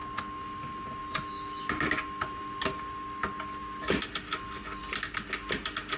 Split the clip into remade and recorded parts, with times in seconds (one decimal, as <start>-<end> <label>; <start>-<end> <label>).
0.0-6.0 recorded